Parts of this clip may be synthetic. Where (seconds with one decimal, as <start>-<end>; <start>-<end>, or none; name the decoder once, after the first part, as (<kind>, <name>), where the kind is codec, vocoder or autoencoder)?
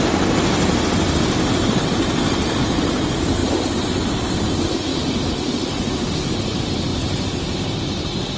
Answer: none